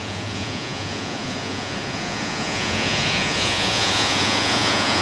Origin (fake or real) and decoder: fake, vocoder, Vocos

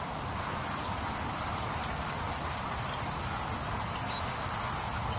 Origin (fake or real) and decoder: real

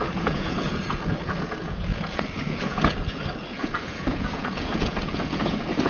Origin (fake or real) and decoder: fake, vocoder, Vocos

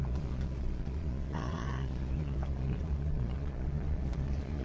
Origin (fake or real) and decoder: fake, vocoder, Vocos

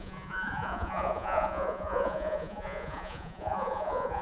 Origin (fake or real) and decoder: fake, vocoder, Vocos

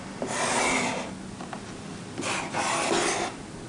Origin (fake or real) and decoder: real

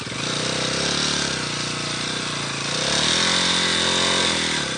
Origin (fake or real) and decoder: real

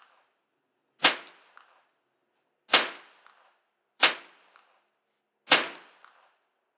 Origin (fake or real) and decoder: real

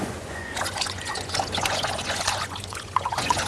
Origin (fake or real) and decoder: fake, vocoder, Vocos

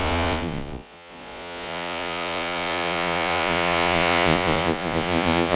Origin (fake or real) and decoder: fake, vocoder, Vocos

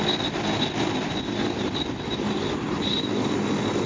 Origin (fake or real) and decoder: real